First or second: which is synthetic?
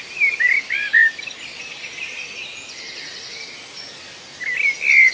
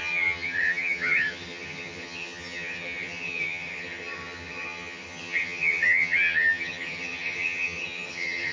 second